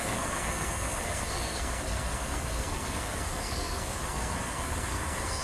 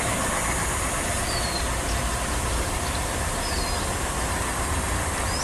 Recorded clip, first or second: second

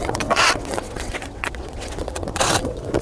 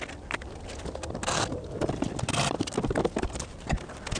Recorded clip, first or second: second